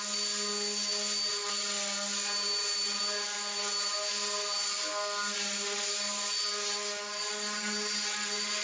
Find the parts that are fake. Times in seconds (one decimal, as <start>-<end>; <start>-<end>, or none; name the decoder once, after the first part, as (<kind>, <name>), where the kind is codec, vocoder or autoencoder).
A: none